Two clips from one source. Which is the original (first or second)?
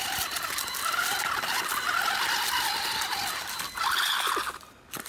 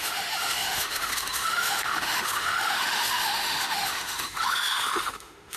first